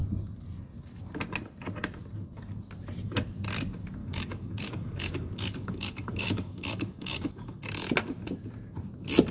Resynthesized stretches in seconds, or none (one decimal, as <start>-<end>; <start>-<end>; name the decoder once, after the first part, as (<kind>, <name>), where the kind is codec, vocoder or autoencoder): 4.0-7.6 (codec, DAC)

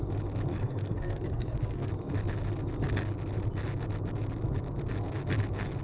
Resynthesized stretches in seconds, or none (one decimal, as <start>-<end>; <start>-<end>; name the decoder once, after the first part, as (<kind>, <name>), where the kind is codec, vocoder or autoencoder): 0.5-1.9 (codec, SNAC)